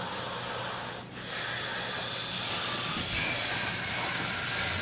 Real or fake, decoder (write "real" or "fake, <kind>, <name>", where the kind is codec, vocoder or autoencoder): real